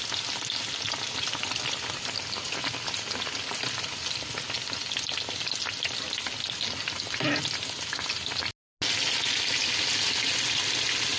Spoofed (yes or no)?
no